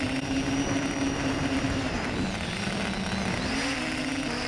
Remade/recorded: recorded